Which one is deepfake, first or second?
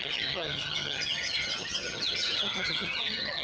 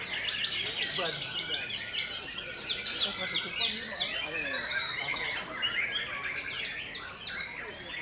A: first